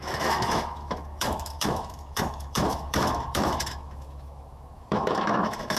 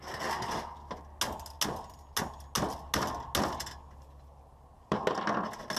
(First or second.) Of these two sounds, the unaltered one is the second